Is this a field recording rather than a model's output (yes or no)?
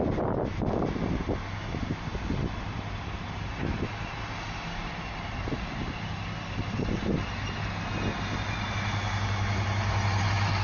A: yes